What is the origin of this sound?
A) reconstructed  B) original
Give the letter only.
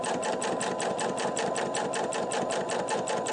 B